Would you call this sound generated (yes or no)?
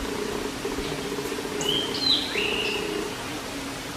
no